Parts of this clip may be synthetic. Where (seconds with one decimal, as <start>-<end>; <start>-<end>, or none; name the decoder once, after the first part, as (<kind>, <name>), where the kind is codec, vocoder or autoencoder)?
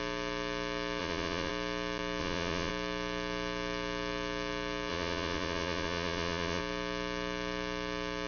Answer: 1.0-1.5 (vocoder, Vocos); 2.2-2.7; 4.9-6.6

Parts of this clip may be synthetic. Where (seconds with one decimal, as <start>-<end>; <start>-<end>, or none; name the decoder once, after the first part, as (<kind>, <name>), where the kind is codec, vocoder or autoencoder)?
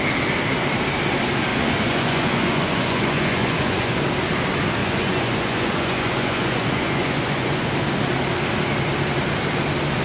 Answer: 1.5-4.0 (vocoder, Vocos); 4.8-7.7